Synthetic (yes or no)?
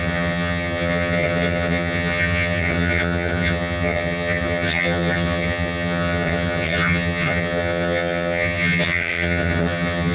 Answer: yes